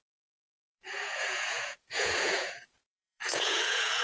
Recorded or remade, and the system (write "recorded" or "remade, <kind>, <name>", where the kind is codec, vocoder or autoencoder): remade, vocoder, Vocos